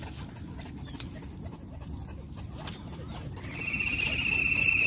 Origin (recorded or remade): recorded